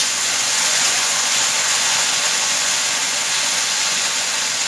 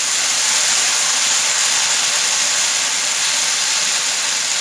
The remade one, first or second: first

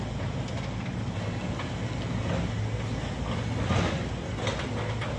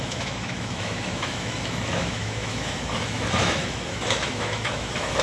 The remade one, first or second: second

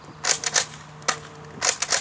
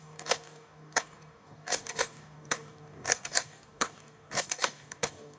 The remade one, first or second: second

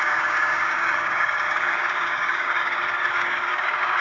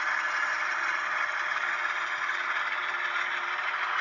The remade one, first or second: first